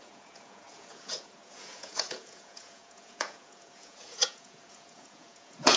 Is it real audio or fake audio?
fake